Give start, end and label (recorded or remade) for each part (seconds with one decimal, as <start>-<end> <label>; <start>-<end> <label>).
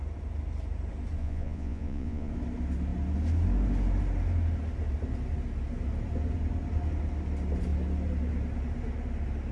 0.0-1.2 recorded; 1.2-2.3 remade; 2.3-9.5 recorded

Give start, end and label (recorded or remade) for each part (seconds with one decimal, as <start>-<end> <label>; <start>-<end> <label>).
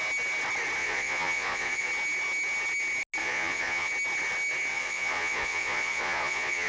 0.0-0.8 recorded; 0.8-1.9 remade; 1.9-3.2 recorded; 3.2-3.9 remade; 3.9-4.7 recorded; 4.7-6.7 remade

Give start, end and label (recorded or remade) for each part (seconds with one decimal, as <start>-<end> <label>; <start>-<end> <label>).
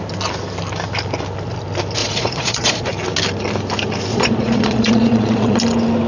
0.0-2.0 recorded; 2.0-2.9 remade; 2.9-4.1 recorded; 4.1-5.6 remade; 5.6-6.1 recorded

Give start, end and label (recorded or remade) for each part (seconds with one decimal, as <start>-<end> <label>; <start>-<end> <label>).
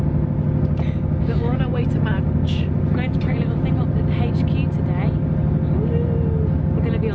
0.0-7.1 recorded